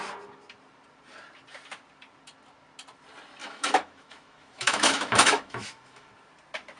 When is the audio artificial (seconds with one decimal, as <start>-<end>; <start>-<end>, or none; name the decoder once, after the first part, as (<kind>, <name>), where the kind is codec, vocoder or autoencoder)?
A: 3.4-6.1 (autoencoder, DAC-VAE)